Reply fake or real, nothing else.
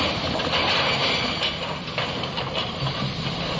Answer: real